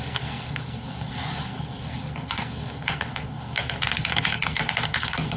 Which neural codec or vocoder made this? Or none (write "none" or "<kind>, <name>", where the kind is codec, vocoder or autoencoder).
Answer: codec, SNAC